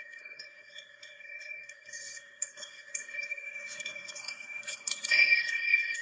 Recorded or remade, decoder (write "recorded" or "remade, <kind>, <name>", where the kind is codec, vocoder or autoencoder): remade, codec, SNAC